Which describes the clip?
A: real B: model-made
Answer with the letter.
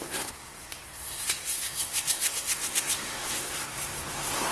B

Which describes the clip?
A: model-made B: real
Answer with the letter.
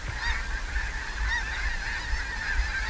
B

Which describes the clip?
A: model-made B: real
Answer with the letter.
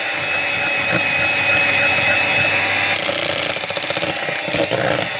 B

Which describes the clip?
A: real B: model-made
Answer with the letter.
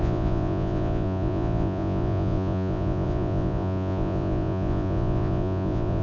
B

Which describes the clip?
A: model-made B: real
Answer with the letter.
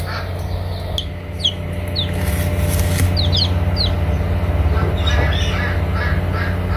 B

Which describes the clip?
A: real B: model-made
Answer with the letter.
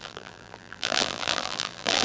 B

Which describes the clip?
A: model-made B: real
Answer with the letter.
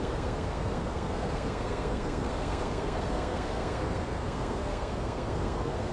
A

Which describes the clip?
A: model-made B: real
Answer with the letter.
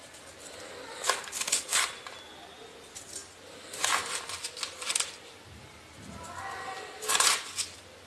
B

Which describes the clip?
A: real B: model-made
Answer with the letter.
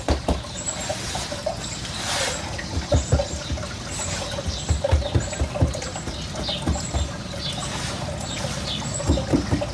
A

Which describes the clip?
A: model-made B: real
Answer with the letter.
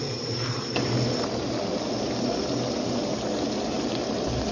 B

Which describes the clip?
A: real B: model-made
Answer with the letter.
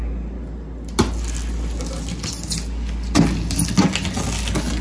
A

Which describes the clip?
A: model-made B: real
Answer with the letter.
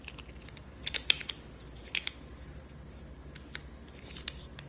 B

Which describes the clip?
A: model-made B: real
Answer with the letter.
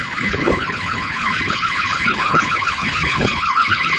A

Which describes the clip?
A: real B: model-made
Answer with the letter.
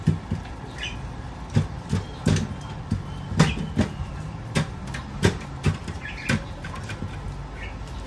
A